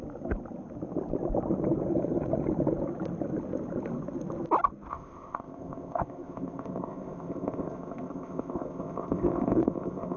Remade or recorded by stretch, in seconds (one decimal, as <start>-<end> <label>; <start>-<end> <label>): 0.0-4.9 recorded; 4.9-10.2 remade